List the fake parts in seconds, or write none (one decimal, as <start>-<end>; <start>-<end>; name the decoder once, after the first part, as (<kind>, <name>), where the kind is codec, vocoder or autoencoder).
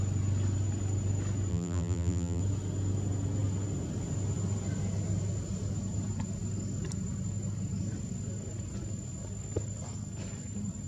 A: 1.5-2.4 (vocoder, BigVGAN v2)